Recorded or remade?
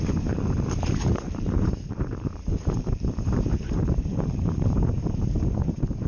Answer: remade